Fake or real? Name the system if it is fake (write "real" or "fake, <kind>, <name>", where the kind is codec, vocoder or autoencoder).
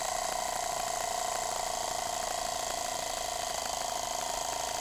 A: real